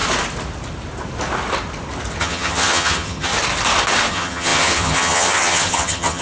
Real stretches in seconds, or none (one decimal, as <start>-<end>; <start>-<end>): 0.0-2.2; 3.3-4.1